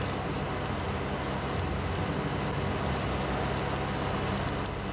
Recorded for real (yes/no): yes